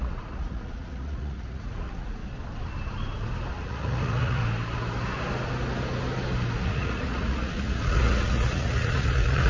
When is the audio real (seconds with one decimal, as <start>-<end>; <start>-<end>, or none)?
2.2-3.5; 4.4-6.6